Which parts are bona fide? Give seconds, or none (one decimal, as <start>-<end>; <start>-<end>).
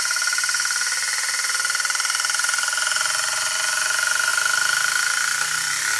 0.0-6.0